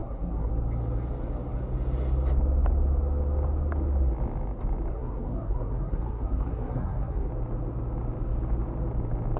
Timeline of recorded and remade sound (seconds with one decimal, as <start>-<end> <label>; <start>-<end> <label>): 0.0-0.5 remade; 0.5-4.9 recorded; 4.9-7.3 remade; 7.3-9.4 recorded